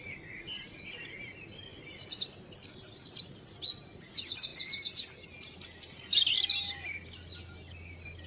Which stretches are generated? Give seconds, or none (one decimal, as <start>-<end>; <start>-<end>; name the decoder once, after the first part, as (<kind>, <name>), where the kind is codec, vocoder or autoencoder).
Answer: none